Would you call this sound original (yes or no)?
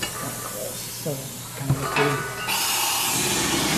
yes